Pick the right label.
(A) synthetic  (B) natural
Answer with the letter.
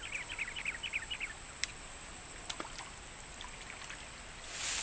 B